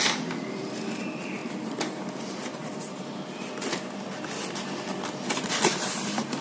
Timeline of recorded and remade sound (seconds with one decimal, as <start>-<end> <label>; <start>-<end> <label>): 0.0-6.4 recorded